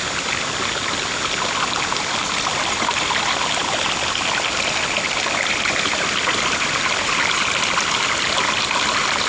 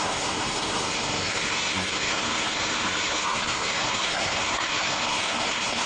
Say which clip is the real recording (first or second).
first